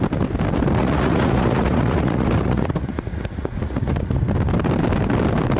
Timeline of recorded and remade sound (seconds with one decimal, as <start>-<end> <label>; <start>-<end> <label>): 0.0-0.8 recorded; 0.8-4.2 remade; 4.2-5.6 recorded